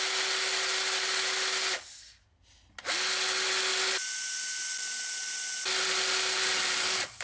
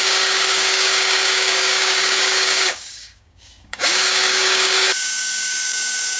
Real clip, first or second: first